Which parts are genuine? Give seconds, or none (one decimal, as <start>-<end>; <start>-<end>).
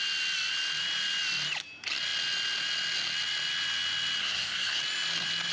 0.0-4.2; 4.8-5.5